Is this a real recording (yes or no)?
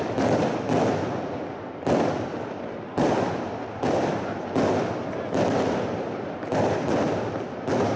yes